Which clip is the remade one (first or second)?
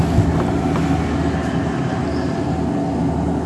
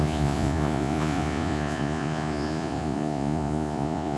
second